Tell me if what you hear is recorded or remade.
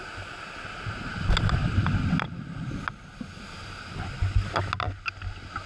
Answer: recorded